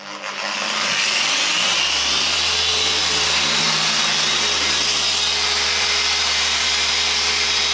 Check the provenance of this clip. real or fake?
fake